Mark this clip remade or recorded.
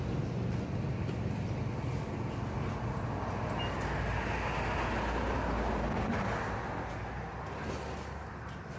recorded